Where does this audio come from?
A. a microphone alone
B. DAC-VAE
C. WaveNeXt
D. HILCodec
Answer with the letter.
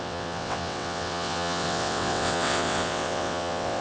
C